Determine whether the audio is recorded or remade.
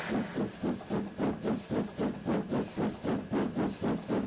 recorded